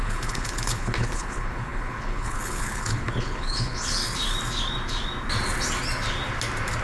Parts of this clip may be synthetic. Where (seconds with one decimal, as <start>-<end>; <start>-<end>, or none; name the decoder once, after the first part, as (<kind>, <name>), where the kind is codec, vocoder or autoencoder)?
0.0-4.0 (codec, HILCodec)

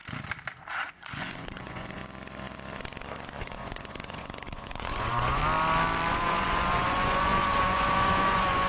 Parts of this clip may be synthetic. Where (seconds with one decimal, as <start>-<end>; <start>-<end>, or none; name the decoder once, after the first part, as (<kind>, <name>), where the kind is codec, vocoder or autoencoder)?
0.9-2.0 (vocoder, Vocos); 3.4-5.4; 6.1-8.7